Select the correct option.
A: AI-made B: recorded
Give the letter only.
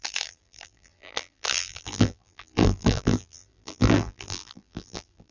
A